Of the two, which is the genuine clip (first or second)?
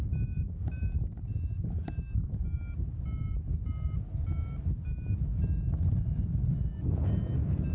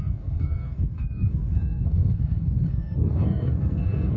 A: first